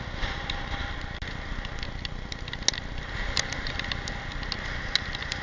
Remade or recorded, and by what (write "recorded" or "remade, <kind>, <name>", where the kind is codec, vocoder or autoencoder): recorded